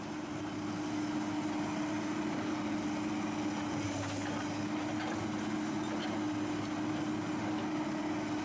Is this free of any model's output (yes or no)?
yes